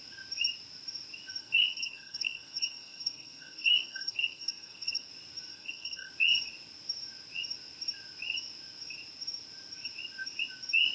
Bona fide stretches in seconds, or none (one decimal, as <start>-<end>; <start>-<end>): 0.0-1.4; 5.1-5.5; 6.1-10.9